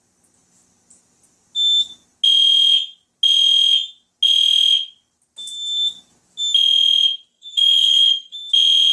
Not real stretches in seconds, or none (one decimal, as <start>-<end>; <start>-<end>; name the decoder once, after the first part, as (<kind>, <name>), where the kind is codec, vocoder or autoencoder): 7.3-8.4 (codec, SNAC)